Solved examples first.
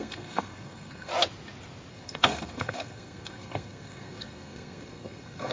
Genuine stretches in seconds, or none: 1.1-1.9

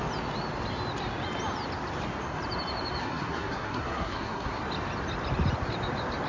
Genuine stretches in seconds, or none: 0.0-3.0; 4.6-6.3

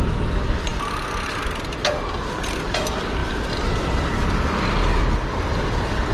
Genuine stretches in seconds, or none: 0.0-6.1

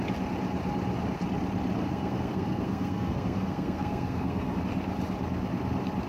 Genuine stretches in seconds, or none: 0.0-1.8; 4.6-6.1

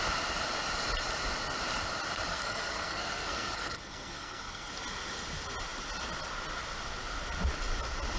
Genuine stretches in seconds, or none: 0.0-2.3; 4.7-8.2